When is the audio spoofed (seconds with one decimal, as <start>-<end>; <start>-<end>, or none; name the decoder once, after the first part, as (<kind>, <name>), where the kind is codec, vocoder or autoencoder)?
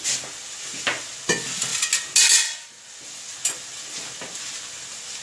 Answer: none